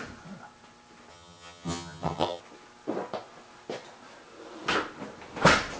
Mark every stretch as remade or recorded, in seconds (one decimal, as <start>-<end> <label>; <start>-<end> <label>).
0.0-1.1 recorded; 1.1-2.4 remade; 2.4-5.8 recorded